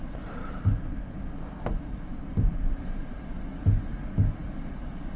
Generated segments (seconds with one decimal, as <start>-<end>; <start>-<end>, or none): 2.3-3.0